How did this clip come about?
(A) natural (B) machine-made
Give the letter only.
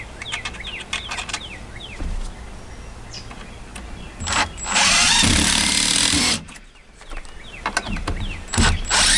A